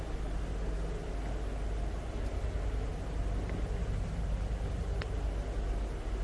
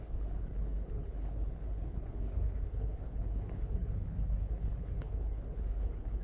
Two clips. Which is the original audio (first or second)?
first